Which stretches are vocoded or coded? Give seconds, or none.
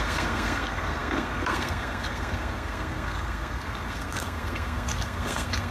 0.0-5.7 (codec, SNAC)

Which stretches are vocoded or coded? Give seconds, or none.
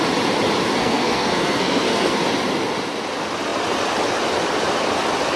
0.8-2.2 (codec, SNAC)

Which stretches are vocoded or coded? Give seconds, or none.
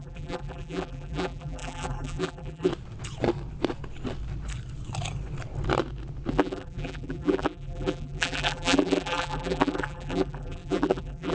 0.0-2.7 (vocoder, BigVGAN v2); 6.3-11.3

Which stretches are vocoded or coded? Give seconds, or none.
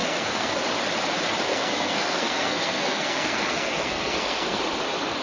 0.0-0.6 (codec, SNAC); 1.5-4.6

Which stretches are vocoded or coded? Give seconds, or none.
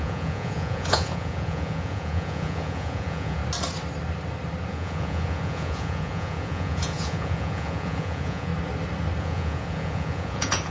0.0-3.4 (vocoder, Vocos); 4.7-8.5; 9.2-10.7